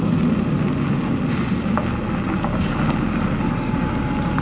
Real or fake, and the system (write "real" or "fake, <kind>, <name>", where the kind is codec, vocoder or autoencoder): real